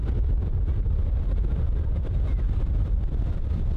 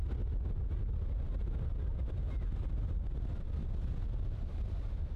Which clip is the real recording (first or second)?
second